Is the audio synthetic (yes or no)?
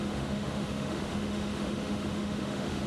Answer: yes